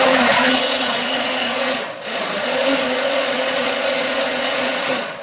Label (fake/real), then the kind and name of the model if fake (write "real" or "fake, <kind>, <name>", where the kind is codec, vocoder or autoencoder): fake, vocoder, Vocos